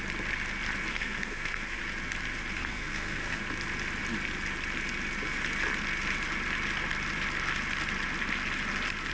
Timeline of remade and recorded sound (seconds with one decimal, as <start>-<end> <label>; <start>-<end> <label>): 0.0-0.9 recorded; 0.9-1.8 remade; 1.8-2.6 recorded; 2.6-3.4 remade; 3.4-9.1 recorded